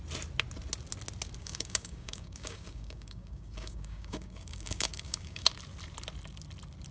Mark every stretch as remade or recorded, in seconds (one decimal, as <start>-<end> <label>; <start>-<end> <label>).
0.0-1.4 recorded; 1.4-5.5 remade; 5.5-6.9 recorded